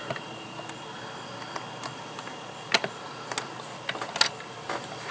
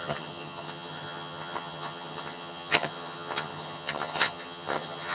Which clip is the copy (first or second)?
second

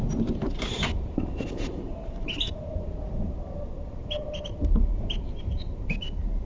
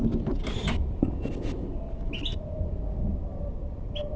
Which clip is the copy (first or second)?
first